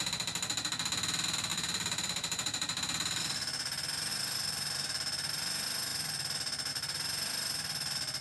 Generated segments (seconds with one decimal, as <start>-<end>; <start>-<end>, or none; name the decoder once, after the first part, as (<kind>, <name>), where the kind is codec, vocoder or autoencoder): 1.5-3.2 (vocoder, BigVGAN v2); 4.1-5.3